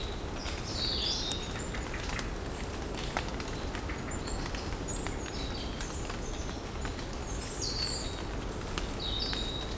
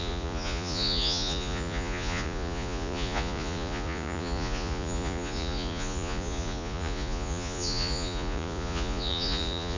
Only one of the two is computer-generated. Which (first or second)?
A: second